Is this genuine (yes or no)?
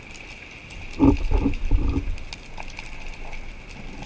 yes